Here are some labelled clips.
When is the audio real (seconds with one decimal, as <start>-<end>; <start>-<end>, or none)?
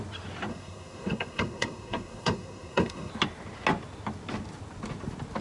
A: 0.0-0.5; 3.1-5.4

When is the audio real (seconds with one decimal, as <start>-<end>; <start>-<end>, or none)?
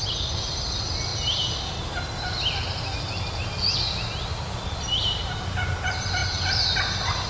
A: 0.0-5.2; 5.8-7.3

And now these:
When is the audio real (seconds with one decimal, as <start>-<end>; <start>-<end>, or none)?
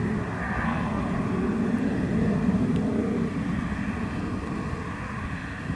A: 0.0-0.4; 1.0-5.8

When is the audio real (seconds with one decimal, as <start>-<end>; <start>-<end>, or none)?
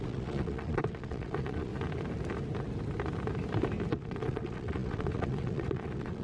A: 1.7-3.9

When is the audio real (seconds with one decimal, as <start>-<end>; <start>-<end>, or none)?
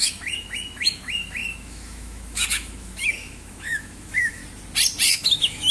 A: 4.4-5.1